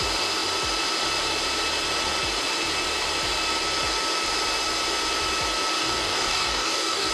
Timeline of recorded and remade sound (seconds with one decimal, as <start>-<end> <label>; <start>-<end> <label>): 0.0-5.8 recorded; 5.8-7.1 remade